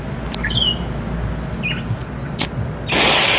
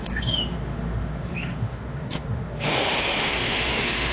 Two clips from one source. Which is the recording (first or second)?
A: first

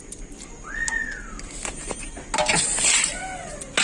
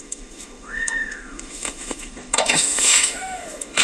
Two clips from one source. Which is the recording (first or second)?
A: first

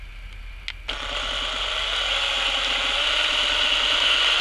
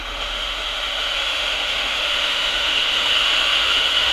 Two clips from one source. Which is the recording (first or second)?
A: first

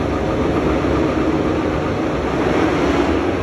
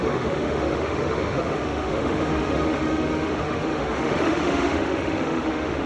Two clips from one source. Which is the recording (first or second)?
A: first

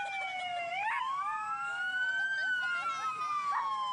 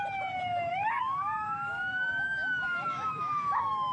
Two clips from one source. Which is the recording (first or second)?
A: first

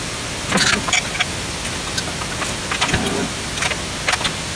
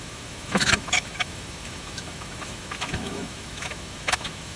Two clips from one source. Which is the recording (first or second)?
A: first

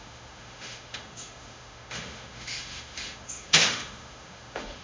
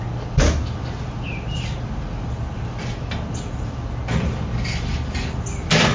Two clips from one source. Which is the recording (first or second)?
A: second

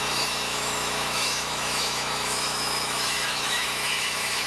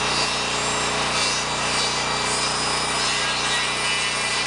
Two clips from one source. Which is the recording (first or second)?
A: second